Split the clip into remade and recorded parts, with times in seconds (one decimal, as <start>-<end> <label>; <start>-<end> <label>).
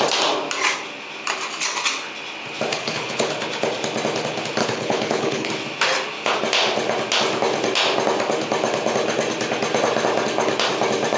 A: 0.0-2.7 recorded; 2.7-3.3 remade; 3.3-4.6 recorded; 4.6-5.5 remade; 5.5-11.2 recorded